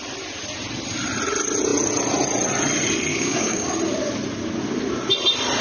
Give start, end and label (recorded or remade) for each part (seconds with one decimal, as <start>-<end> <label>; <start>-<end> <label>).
0.0-3.1 recorded; 3.1-3.7 remade; 3.7-5.6 recorded